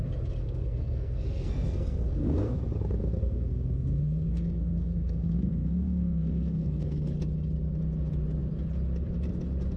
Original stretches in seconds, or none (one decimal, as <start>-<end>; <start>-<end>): 0.0-0.4; 2.5-3.0; 7.1-9.8

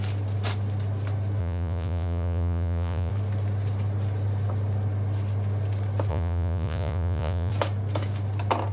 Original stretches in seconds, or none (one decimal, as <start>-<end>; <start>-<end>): 0.0-1.4; 3.1-6.1; 7.5-8.7